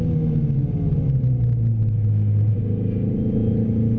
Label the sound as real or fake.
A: real